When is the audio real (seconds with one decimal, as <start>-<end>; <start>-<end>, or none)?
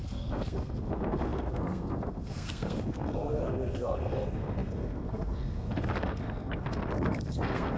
none